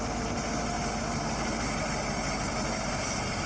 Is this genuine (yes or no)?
yes